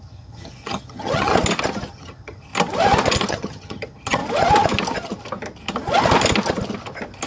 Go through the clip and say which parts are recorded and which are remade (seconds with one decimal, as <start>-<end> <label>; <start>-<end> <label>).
0.0-1.3 remade; 1.3-1.9 recorded; 1.9-2.5 remade; 2.5-3.3 recorded; 3.3-4.2 remade; 4.2-7.3 recorded